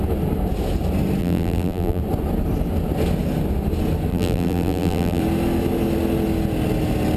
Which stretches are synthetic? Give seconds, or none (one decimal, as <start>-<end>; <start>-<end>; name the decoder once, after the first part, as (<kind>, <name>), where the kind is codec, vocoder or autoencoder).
1.2-2.0 (vocoder, BigVGAN v2); 4.1-5.2